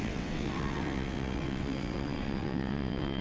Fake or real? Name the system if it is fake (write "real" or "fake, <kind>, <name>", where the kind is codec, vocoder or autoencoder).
fake, vocoder, WaveNeXt